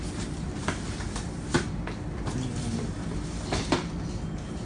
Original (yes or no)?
yes